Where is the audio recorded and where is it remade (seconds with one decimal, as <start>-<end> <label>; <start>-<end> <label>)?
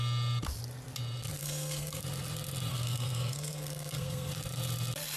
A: 0.0-1.4 recorded; 1.4-2.0 remade; 2.0-2.7 recorded; 2.7-4.3 remade; 4.3-5.2 recorded